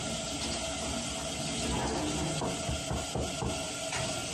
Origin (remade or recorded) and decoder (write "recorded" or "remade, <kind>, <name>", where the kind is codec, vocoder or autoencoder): recorded